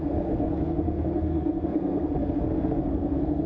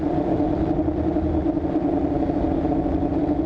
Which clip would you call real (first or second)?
second